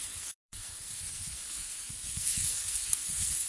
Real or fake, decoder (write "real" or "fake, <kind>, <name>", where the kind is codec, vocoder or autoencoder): fake, codec, SNAC